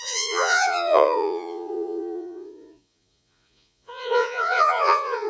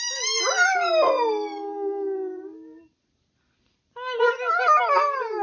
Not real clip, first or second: first